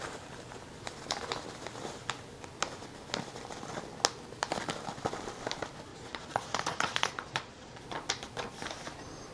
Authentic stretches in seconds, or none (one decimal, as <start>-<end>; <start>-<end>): 0.0-5.9; 7.8-9.3